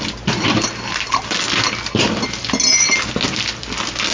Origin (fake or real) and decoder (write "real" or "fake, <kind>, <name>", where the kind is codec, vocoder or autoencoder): real